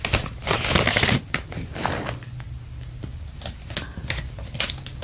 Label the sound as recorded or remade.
recorded